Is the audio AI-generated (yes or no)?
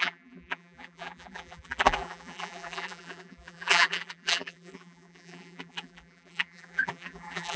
yes